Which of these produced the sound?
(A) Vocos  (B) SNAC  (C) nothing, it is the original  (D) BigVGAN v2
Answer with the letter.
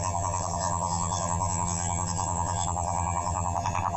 D